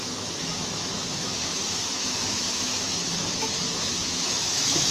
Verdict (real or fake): fake